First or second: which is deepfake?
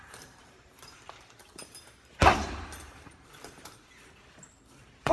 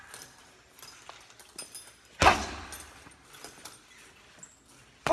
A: first